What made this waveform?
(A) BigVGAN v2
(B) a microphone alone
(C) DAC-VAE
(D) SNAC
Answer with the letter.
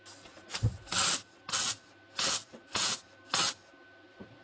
B